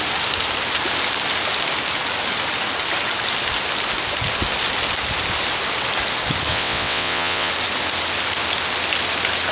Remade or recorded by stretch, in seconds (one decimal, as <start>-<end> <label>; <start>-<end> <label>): 0.0-6.5 recorded; 6.5-7.5 remade; 7.5-9.5 recorded